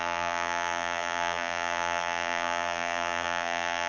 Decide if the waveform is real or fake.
fake